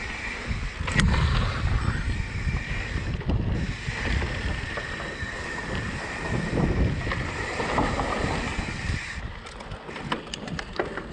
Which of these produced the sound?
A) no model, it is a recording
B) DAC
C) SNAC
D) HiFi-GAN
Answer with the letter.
A